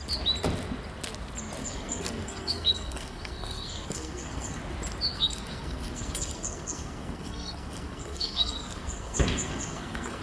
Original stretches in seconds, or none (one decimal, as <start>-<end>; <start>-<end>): 0.0-1.6; 4.6-5.1